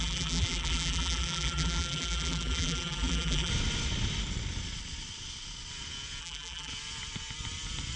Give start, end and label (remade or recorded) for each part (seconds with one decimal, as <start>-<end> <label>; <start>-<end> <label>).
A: 0.0-3.5 remade; 3.5-6.2 recorded; 6.2-6.7 remade; 6.7-8.0 recorded

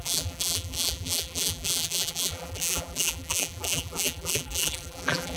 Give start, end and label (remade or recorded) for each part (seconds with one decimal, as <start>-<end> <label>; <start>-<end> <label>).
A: 0.0-5.4 remade

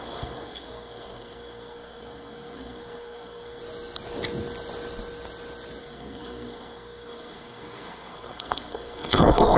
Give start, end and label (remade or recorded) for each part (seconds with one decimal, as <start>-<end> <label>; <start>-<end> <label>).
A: 0.0-3.6 remade; 3.6-5.8 recorded; 5.8-9.6 remade

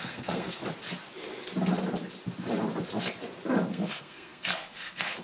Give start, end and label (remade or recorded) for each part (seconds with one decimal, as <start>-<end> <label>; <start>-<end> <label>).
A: 0.0-0.6 remade; 0.6-3.7 recorded; 3.7-5.2 remade

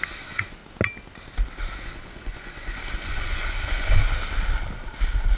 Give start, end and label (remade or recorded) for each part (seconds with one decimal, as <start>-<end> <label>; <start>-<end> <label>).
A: 0.0-0.6 remade; 0.6-1.8 recorded; 1.8-4.0 remade; 4.0-5.4 recorded

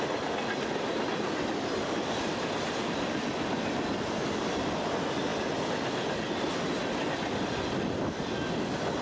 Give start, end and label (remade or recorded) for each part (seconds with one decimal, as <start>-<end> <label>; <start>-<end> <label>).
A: 0.0-9.0 recorded

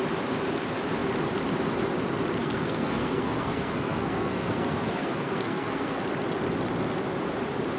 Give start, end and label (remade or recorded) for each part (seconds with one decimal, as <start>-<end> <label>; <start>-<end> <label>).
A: 0.0-2.4 recorded; 2.4-6.0 remade; 6.0-7.8 recorded